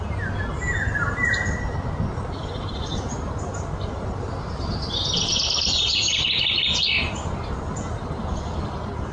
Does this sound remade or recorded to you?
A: recorded